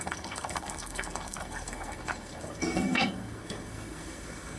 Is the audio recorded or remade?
remade